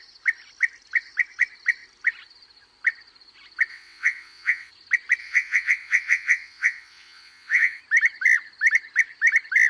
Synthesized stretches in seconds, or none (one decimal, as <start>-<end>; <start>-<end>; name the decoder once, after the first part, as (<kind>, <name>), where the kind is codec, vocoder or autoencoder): 3.7-4.7 (vocoder, WaveNeXt); 5.2-7.8